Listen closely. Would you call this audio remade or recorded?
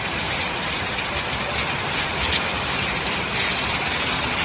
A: recorded